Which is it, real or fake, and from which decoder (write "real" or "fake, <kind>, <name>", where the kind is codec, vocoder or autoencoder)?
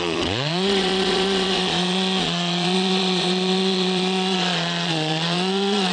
fake, vocoder, Vocos